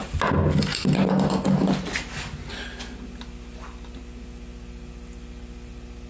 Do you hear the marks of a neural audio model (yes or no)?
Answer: no